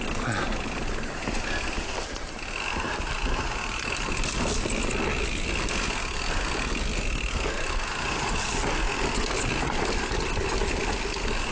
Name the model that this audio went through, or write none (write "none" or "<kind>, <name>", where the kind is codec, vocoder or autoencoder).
none